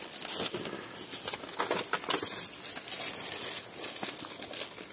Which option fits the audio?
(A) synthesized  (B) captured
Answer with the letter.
B